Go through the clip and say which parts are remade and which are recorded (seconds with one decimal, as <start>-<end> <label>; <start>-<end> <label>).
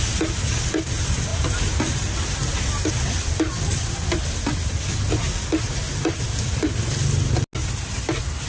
0.0-8.5 recorded